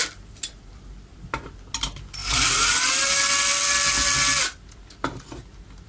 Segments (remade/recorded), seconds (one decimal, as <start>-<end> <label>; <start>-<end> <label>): 0.0-5.9 recorded